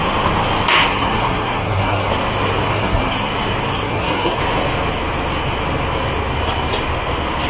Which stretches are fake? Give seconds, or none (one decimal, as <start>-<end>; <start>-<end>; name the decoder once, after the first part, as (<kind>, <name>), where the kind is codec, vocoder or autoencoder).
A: 0.9-2.1 (codec, SNAC); 2.7-3.3; 3.7-4.4